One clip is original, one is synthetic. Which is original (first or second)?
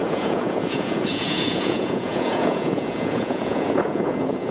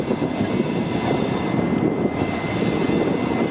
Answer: second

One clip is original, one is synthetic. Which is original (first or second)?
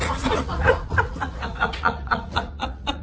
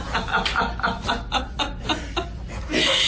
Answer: second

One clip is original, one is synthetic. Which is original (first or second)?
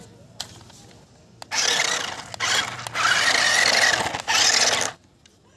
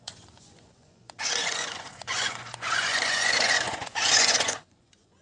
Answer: first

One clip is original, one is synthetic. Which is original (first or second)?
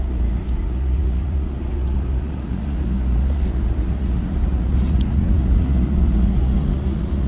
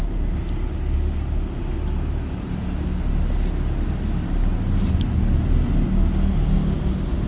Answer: second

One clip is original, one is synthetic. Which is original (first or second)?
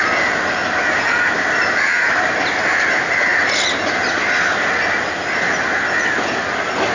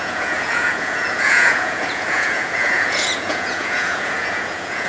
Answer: first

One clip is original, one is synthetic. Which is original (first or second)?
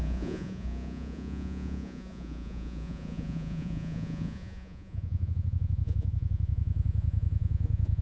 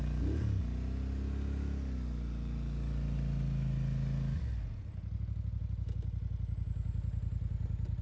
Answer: second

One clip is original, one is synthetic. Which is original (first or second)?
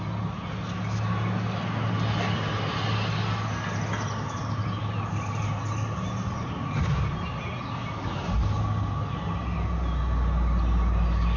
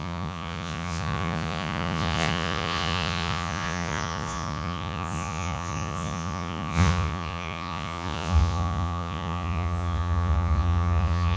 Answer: first